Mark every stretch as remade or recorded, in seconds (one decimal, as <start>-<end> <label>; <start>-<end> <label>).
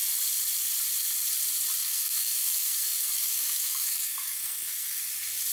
0.0-1.8 recorded; 1.8-5.1 remade; 5.1-5.5 recorded